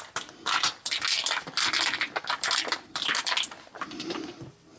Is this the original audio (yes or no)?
yes